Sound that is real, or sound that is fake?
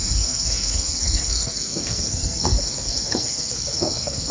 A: fake